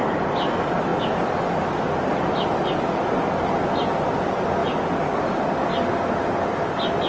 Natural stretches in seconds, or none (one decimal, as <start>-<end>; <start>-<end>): 0.0-7.1